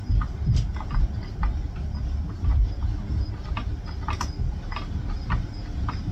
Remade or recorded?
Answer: recorded